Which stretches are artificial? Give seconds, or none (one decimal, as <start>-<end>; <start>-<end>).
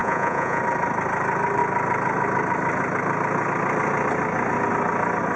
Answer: 0.0-0.6